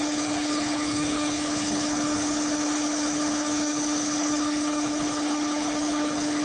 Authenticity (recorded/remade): remade